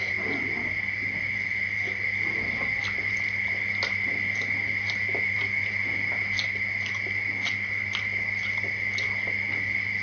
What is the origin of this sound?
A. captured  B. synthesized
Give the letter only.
A